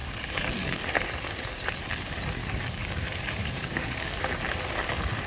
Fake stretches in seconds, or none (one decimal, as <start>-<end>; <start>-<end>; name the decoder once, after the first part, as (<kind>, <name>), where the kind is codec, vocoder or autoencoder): 0.0-0.8 (codec, DAC); 2.4-3.0; 3.4-4.2